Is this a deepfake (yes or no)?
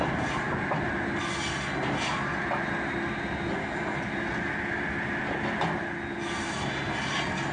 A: no